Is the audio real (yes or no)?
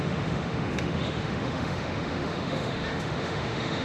no